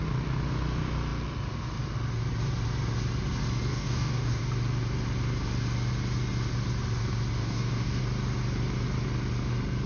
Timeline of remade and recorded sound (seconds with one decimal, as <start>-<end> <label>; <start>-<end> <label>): 0.0-3.7 recorded; 3.7-4.4 remade; 4.4-7.4 recorded; 7.4-8.0 remade; 8.0-9.9 recorded